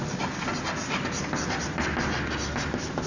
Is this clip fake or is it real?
real